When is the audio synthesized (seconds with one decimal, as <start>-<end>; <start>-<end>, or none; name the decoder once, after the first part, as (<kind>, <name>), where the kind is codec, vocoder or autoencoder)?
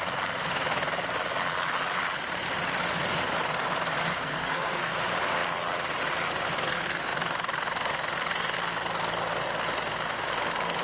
4.0-4.9 (codec, SNAC)